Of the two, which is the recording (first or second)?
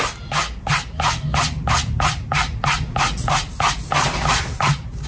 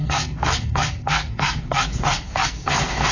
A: first